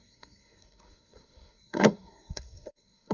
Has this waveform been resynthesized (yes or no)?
yes